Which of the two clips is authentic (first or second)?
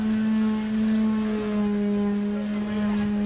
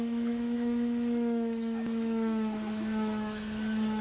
first